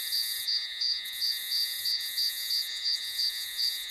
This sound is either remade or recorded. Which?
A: remade